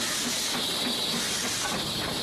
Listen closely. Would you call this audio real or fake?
real